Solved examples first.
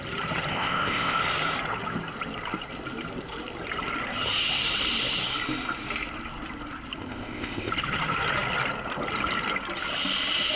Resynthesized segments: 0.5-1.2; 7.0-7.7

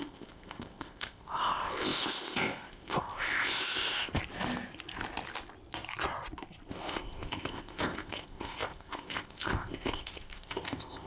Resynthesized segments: 0.0-4.2; 6.7-11.1

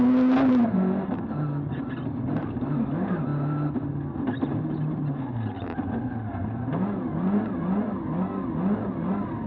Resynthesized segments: none

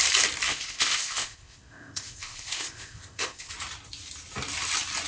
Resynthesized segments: 0.5-3.5

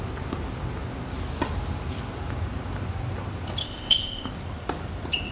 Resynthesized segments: 3.6-4.3

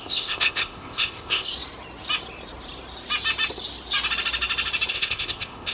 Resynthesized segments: 0.0-1.5; 4.9-5.7

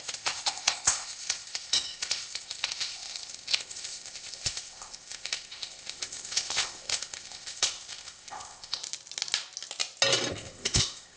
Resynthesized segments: 0.0-8.8; 10.3-11.2